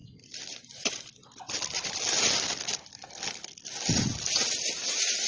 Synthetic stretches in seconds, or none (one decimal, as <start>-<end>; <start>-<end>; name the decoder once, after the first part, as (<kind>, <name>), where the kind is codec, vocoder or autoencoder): none